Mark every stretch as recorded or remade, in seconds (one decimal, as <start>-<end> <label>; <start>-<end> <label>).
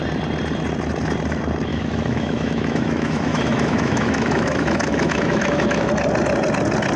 0.0-1.7 recorded; 1.7-5.9 remade; 5.9-7.0 recorded